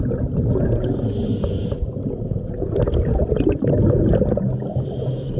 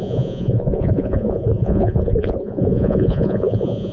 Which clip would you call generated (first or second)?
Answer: second